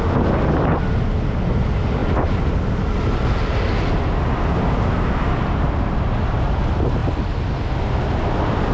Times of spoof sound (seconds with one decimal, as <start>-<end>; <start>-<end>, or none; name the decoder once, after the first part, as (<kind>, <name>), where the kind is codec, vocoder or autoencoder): none